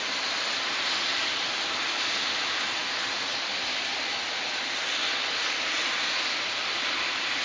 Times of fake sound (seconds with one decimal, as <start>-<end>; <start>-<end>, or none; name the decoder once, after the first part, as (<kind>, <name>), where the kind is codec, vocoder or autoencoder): 0.0-1.2 (vocoder, BigVGAN v2); 1.8-7.4